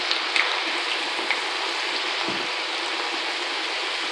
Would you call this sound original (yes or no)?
yes